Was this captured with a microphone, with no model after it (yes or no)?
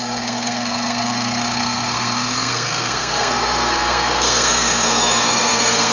no